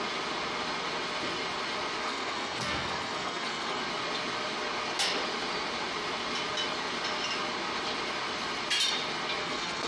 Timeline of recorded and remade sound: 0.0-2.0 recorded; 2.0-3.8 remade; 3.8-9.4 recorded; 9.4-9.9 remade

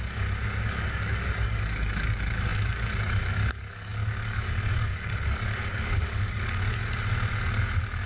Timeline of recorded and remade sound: 0.0-6.8 remade; 6.8-7.4 recorded; 7.4-8.1 remade

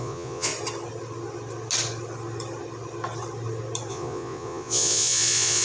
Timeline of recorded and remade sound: 0.0-0.5 remade; 0.5-3.9 recorded; 3.9-5.6 remade

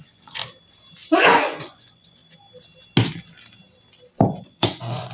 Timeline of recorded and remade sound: 0.0-0.4 remade; 0.4-1.2 recorded; 1.2-2.2 remade; 2.2-4.4 recorded; 4.4-5.1 remade